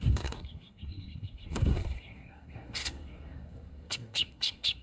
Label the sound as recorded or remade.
remade